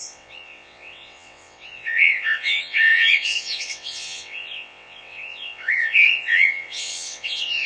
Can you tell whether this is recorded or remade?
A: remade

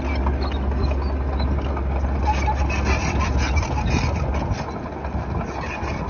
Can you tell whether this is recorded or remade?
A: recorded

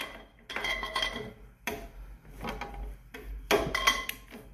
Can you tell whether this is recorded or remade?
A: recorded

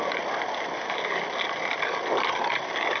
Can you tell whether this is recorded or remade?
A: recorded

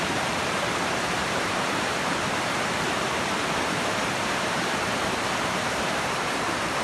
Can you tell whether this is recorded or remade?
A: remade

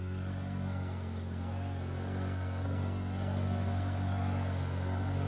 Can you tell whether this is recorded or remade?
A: remade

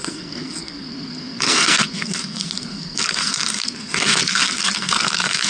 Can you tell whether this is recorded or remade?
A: remade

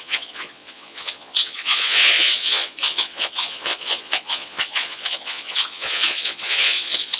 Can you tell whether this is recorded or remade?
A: remade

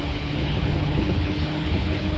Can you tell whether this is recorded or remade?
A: remade